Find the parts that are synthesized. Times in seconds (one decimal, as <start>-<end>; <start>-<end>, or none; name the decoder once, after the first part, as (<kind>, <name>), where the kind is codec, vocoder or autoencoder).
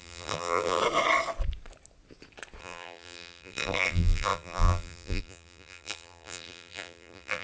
0.0-0.8 (vocoder, BigVGAN v2); 2.6-7.4